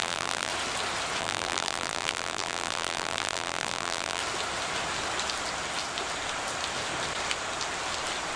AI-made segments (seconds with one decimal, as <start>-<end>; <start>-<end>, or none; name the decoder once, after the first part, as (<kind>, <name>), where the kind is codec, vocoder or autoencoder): 0.0-0.5 (vocoder, BigVGAN v2); 1.2-4.2